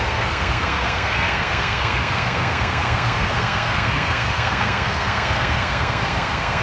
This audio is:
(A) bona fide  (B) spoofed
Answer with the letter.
B